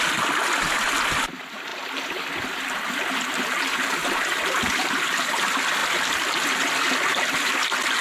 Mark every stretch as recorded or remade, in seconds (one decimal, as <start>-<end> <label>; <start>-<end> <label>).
0.0-8.0 recorded

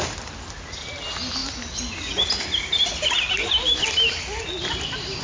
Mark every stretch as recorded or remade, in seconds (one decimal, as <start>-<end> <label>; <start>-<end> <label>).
0.0-5.2 recorded

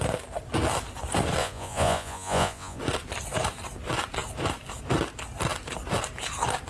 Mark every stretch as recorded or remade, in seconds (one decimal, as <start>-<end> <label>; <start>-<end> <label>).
0.0-1.4 recorded; 1.4-2.8 remade; 2.8-6.7 recorded

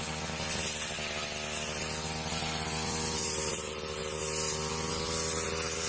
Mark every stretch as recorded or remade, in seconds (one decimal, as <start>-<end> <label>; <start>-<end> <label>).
0.0-5.9 recorded

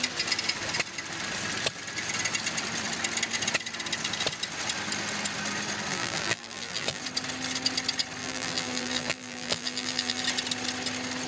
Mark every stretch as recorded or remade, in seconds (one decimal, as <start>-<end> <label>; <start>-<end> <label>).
0.0-5.9 recorded; 5.9-7.0 remade; 7.0-8.2 recorded; 8.2-10.2 remade; 10.2-11.3 recorded

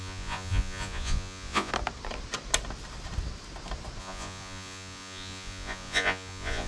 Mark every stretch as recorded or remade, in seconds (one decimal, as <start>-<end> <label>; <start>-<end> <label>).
0.0-1.7 remade; 1.7-4.0 recorded; 4.0-6.7 remade

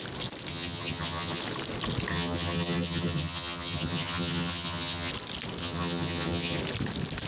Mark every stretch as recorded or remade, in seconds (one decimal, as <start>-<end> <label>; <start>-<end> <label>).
0.0-0.5 recorded; 0.5-1.4 remade; 1.4-2.1 recorded; 2.1-5.1 remade; 5.1-5.6 recorded; 5.6-6.6 remade; 6.6-7.3 recorded

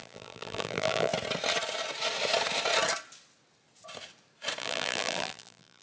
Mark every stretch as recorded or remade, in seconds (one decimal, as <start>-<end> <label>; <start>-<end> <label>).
0.0-1.1 remade; 1.1-4.6 recorded; 4.6-5.8 remade